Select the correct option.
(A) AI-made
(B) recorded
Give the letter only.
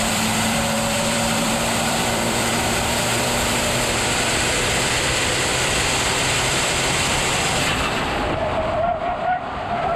A